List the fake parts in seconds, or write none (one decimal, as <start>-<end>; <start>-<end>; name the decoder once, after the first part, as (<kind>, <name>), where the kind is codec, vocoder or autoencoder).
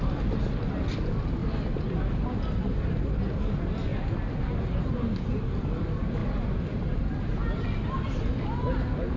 none